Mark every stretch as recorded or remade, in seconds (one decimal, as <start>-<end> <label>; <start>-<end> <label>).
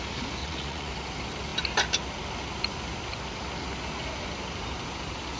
0.0-0.4 recorded; 0.4-0.9 remade; 0.9-5.4 recorded